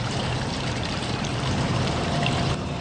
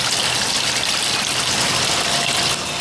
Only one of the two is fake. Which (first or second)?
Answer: first